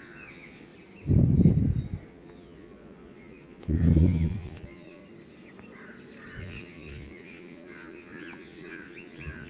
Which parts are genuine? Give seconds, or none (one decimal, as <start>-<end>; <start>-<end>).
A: 0.7-2.1; 5.0-6.4